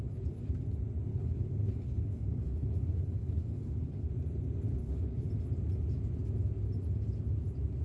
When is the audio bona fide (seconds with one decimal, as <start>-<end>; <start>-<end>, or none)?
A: 0.0-1.1; 4.1-4.8; 5.3-7.8